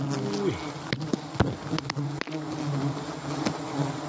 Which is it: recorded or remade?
recorded